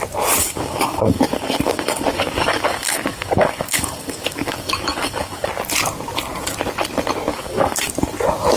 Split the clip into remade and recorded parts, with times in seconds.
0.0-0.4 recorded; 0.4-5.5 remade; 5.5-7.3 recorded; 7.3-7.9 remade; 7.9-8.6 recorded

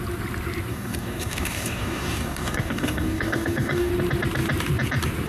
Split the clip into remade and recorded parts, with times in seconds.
0.0-0.7 recorded; 0.7-3.9 remade; 3.9-5.3 recorded

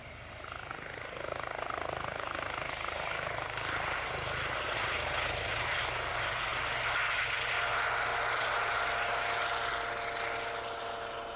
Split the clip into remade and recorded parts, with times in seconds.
0.0-11.4 recorded

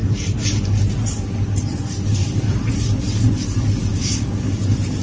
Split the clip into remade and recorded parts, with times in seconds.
0.0-3.9 recorded; 3.9-4.6 remade; 4.6-5.0 recorded